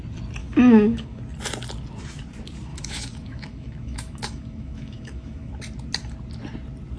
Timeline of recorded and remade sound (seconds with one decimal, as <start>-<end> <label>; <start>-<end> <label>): 0.0-0.4 recorded; 0.4-1.2 remade; 1.2-2.7 recorded; 2.7-5.5 remade; 5.5-7.0 recorded